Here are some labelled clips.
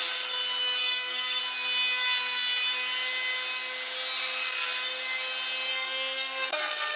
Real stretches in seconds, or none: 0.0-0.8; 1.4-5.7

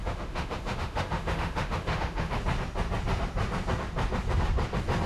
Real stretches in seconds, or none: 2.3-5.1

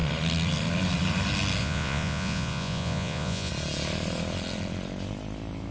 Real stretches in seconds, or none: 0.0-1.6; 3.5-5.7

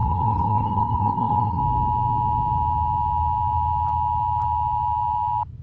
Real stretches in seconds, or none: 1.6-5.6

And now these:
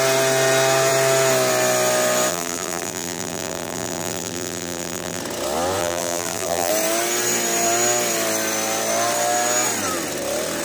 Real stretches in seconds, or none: 0.0-2.3; 5.2-5.8; 6.7-10.6

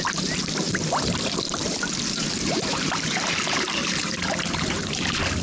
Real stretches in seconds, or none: none